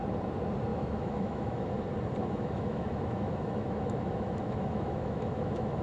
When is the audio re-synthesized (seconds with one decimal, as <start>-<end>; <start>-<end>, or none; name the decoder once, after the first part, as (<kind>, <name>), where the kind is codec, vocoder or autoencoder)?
0.7-1.7 (autoencoder, DAC-VAE); 2.2-5.8